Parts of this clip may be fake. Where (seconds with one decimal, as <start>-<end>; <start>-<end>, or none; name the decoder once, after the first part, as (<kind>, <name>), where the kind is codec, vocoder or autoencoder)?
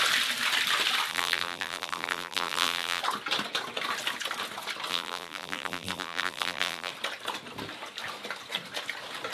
1.1-3.0 (vocoder, BigVGAN v2); 4.9-6.9